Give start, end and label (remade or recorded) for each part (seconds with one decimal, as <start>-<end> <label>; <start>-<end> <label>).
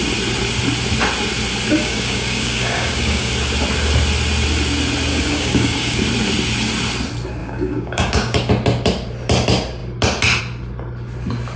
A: 0.0-1.7 recorded; 1.7-3.3 remade; 3.3-5.1 recorded; 5.1-6.0 remade; 6.0-7.4 recorded; 7.4-8.5 remade; 8.5-11.6 recorded